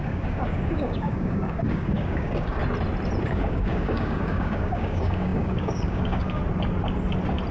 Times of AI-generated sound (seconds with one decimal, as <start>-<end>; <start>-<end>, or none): 0.0-2.6; 3.3-6.4